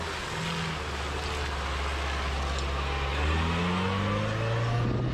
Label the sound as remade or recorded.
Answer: recorded